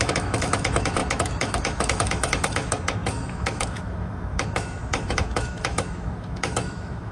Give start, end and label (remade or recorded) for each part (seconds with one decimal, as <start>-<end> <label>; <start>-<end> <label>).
0.0-7.1 remade